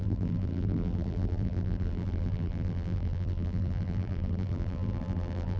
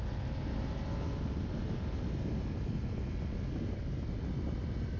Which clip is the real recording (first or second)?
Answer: second